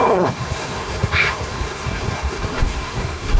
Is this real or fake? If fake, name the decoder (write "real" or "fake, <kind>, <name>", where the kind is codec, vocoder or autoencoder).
fake, codec, SNAC